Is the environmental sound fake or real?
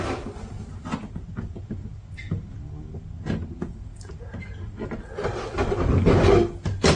real